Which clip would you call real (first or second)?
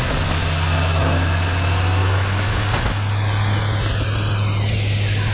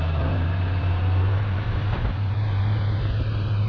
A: first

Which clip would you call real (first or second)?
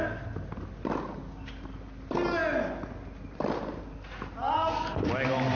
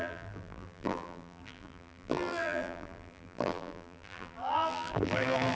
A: first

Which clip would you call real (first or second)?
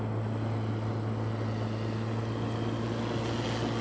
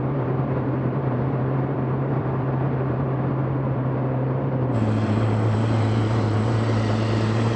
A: first